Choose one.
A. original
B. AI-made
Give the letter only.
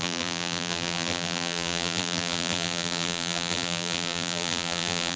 B